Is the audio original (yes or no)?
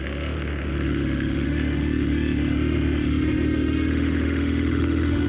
no